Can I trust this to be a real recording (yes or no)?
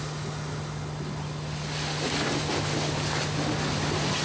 yes